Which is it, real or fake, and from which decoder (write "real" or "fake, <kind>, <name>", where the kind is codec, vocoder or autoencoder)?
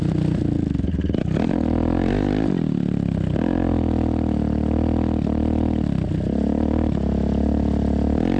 real